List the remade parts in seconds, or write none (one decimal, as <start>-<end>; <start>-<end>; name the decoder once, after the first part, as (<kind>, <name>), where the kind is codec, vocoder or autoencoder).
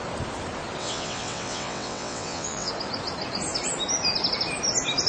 0.8-2.7 (vocoder, WaveNeXt)